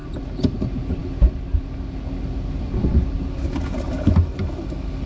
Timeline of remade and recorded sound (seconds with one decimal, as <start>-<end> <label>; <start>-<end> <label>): 0.0-5.1 recorded